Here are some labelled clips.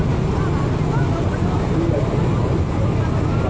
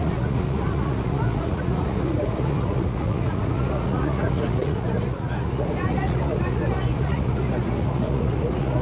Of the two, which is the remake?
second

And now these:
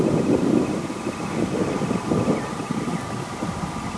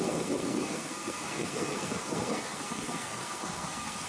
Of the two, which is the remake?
second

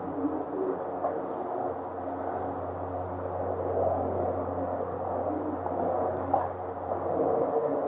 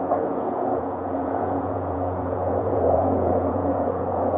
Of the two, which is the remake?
second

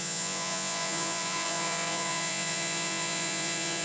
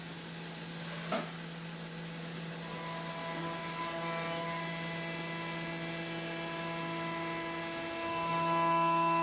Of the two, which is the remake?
first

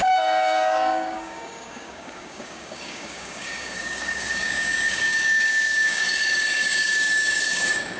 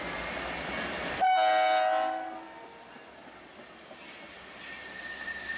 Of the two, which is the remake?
first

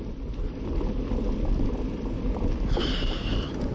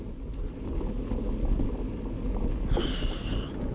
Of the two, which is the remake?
first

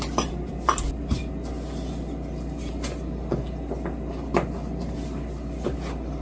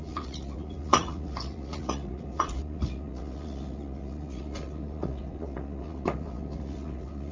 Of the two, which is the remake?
second